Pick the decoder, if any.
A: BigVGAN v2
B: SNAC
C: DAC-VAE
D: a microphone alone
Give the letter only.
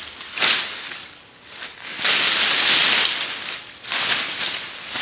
D